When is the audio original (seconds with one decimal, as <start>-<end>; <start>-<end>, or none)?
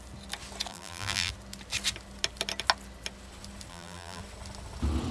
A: 0.0-0.7; 1.3-3.7; 4.2-5.1